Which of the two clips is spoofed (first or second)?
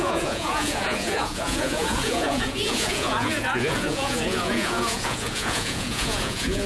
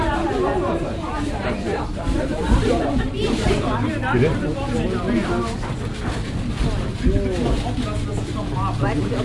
first